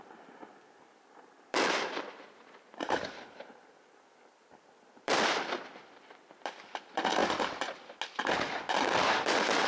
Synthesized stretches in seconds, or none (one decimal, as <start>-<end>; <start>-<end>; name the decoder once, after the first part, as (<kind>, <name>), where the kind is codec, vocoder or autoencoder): 0.0-7.2 (vocoder, BigVGAN v2); 8.7-9.7